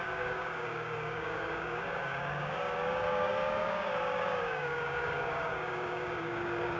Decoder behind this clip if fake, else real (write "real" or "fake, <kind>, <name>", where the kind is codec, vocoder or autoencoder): fake, codec, DAC